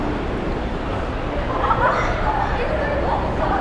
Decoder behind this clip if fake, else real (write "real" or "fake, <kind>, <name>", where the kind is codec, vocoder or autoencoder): real